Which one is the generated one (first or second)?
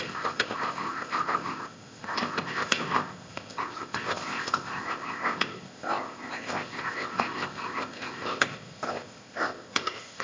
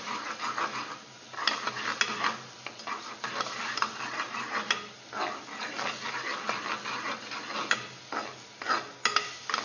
first